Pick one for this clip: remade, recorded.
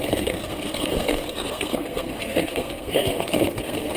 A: remade